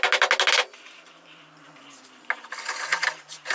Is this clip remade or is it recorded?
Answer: recorded